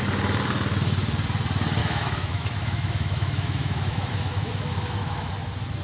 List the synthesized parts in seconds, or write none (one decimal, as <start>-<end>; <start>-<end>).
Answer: 1.8-5.3